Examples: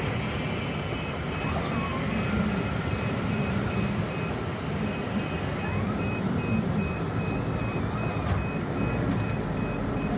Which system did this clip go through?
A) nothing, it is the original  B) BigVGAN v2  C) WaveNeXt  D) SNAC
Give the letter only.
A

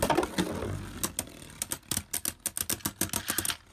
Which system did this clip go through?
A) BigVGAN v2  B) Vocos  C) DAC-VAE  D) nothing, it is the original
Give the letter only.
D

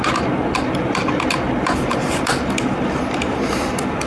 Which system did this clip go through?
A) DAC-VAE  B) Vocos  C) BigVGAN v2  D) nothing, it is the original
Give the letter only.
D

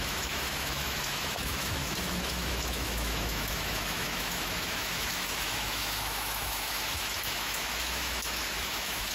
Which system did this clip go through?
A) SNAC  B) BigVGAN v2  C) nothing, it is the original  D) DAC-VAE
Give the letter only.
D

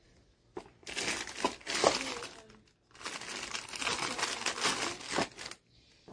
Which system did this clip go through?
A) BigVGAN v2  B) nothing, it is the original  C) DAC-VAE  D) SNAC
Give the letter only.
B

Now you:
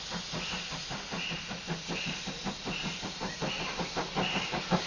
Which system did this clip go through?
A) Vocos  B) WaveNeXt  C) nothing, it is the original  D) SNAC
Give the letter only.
C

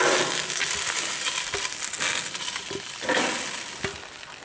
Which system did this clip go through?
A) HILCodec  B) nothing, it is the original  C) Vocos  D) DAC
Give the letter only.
B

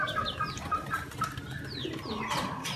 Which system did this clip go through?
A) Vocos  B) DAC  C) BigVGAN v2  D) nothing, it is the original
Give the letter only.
D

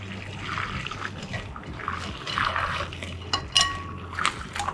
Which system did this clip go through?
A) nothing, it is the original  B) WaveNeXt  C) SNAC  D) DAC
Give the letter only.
A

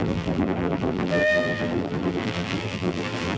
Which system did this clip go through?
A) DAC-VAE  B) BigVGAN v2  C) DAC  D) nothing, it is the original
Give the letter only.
B